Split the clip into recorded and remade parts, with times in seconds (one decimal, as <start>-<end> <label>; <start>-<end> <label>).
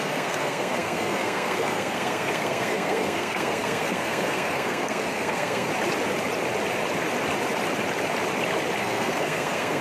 0.0-5.7 remade; 5.7-8.8 recorded; 8.8-9.8 remade